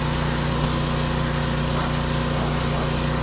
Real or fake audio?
real